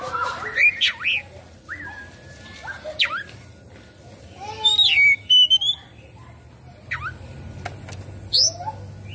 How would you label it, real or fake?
real